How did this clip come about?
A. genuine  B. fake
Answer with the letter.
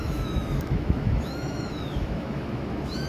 B